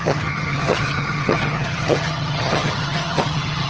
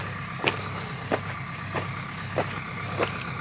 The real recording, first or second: second